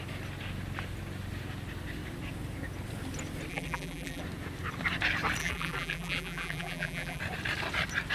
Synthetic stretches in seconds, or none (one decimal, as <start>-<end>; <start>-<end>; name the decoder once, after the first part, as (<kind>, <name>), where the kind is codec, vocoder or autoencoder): 3.5-4.2 (vocoder, BigVGAN v2); 5.4-7.2